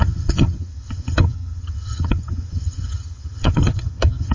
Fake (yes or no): yes